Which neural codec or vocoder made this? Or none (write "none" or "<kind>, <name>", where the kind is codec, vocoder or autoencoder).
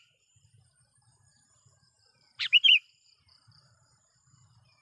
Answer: vocoder, BigVGAN v2